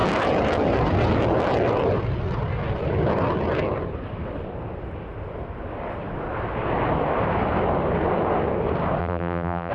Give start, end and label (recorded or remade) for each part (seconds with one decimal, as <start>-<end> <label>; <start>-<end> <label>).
0.0-9.0 recorded; 9.0-9.7 remade